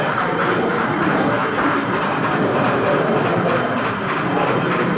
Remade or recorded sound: remade